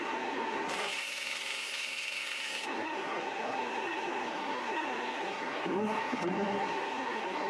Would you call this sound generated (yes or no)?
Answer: yes